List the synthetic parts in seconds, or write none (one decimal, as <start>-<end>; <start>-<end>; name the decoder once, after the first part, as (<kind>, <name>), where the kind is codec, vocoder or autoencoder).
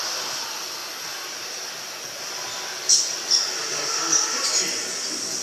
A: 4.1-4.6 (vocoder, BigVGAN v2)